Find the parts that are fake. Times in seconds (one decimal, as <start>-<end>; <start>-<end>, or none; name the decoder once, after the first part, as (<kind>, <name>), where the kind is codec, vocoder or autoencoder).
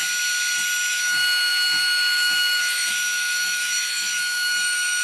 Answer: 0.9-5.0 (autoencoder, DAC-VAE)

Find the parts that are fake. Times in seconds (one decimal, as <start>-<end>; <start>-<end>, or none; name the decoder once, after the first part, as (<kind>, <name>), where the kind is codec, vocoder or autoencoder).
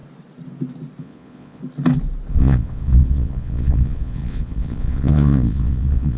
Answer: 1.0-1.6 (vocoder, Vocos); 2.3-6.2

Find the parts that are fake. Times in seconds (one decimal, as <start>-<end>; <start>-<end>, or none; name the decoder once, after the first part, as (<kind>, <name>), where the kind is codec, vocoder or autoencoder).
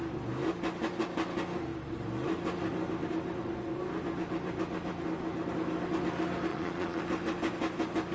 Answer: 6.5-7.0 (vocoder, Vocos)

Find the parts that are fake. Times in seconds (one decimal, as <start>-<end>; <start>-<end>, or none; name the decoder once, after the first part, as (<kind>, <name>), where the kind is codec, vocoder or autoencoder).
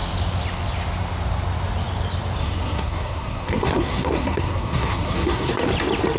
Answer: 2.4-5.5 (codec, SNAC)